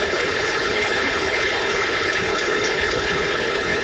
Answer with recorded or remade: remade